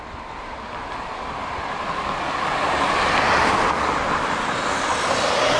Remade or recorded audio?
recorded